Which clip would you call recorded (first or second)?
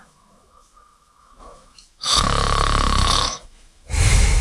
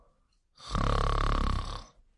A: second